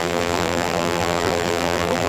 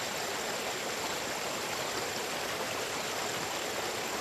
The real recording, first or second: second